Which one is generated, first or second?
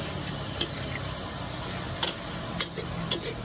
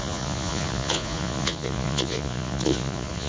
second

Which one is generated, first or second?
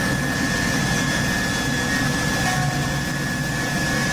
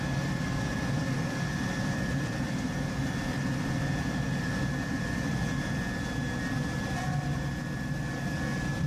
second